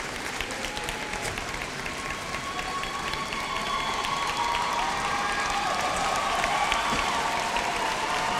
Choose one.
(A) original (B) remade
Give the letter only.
B